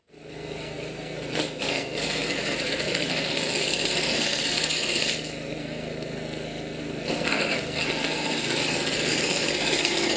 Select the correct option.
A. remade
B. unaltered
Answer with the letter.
A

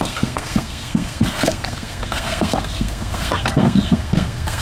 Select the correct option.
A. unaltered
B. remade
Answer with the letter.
B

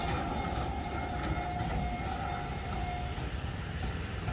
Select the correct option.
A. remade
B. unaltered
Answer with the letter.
B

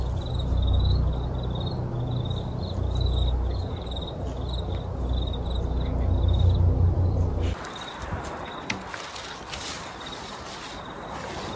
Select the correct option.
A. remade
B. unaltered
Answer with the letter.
B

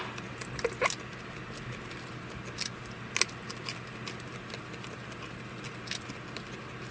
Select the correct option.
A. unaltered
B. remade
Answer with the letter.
A